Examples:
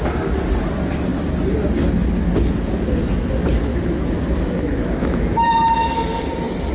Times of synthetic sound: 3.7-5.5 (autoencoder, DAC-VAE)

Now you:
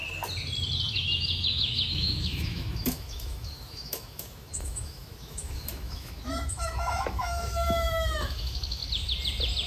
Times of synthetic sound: 0.9-8.8 (autoencoder, DAC-VAE)